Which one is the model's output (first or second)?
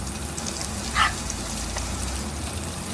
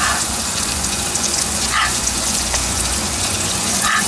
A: second